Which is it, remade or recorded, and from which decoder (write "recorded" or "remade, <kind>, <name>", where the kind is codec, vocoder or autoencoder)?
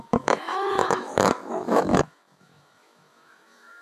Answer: remade, autoencoder, DAC-VAE